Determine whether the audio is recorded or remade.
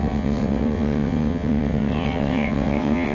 remade